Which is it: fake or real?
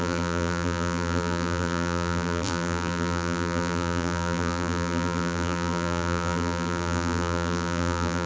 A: fake